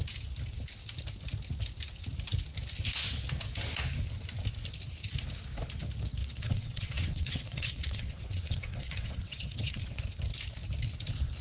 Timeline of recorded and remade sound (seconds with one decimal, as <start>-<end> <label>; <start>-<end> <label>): 0.0-6.2 recorded; 6.2-10.0 remade; 10.0-11.4 recorded